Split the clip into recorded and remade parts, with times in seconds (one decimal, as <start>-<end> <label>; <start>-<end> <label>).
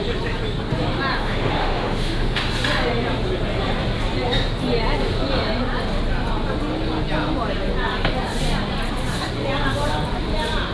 0.0-1.1 recorded; 1.1-2.5 remade; 2.5-10.7 recorded